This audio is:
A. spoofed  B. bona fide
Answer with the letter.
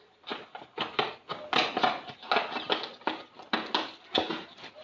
B